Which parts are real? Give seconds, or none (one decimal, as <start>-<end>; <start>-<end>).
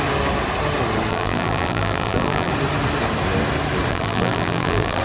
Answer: 0.0-1.1; 2.5-3.9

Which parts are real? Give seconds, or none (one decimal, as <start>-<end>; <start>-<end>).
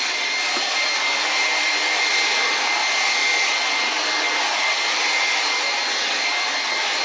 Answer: 0.0-7.0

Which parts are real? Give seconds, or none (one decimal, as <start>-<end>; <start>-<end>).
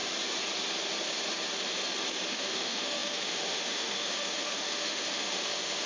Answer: 0.0-2.3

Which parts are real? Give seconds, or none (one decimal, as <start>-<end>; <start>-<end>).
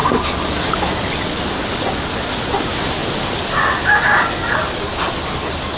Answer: 0.0-3.0; 4.0-5.8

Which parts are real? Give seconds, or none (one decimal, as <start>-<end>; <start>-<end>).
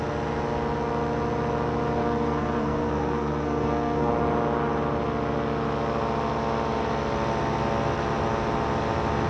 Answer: 0.0-2.0; 4.1-9.3